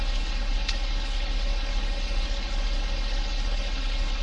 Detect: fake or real fake